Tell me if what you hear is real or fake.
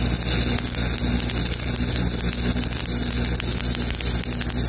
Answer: real